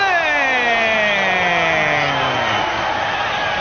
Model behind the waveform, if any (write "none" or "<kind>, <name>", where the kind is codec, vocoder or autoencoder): none